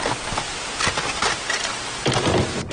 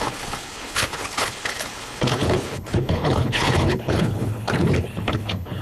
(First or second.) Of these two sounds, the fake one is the second